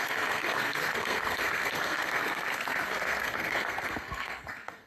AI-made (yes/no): yes